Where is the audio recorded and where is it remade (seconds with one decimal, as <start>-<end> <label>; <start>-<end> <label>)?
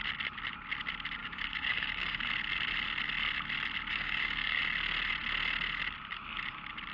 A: 0.0-1.2 recorded; 1.2-2.3 remade; 2.3-3.9 recorded; 3.9-4.6 remade; 4.6-6.9 recorded